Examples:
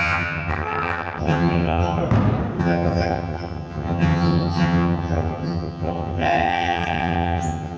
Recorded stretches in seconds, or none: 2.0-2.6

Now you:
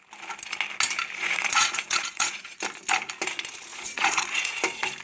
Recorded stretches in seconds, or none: 0.0-1.2; 2.6-3.7; 4.6-5.0

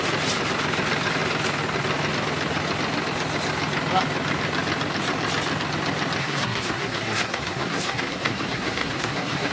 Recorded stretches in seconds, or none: 0.0-6.2

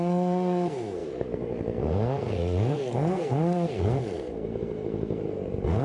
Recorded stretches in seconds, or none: none